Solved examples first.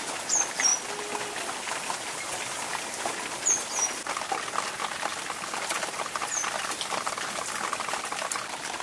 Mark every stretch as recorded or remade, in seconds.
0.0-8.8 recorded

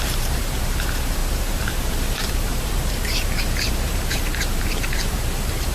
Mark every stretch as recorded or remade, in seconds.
0.0-5.7 remade